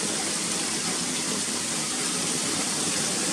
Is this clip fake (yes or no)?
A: no